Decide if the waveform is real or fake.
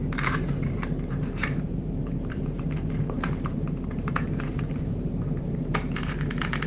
fake